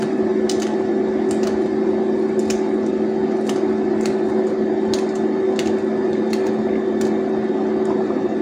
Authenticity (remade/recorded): recorded